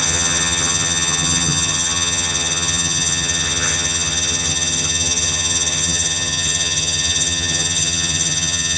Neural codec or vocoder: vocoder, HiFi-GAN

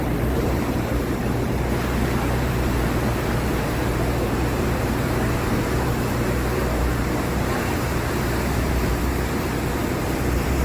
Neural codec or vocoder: vocoder, BigVGAN v2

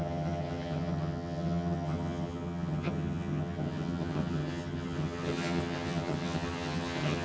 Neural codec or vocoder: vocoder, HiFi-GAN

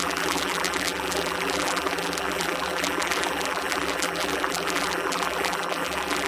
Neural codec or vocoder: vocoder, BigVGAN v2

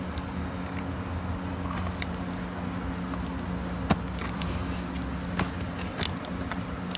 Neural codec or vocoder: none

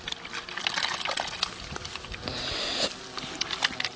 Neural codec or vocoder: none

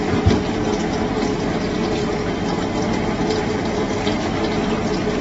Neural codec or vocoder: none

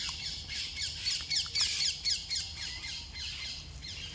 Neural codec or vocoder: none